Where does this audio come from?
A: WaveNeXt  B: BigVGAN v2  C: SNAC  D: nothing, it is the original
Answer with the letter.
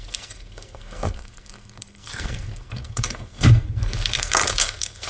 C